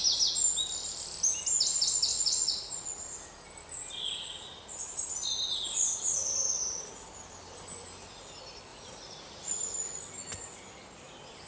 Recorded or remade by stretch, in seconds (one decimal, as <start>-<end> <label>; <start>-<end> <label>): 0.0-2.1 recorded; 2.1-3.0 remade; 3.0-8.7 recorded; 8.7-9.6 remade; 9.6-11.5 recorded